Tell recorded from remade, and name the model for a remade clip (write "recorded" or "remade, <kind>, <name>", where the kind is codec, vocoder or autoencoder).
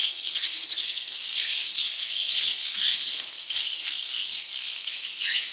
remade, codec, SNAC